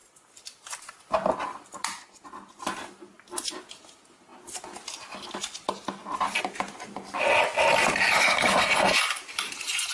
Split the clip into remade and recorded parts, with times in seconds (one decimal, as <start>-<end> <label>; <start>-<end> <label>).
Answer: 0.0-9.9 recorded